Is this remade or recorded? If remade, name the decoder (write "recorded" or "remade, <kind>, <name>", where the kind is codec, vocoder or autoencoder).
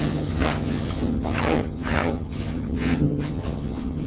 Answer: remade, vocoder, HiFi-GAN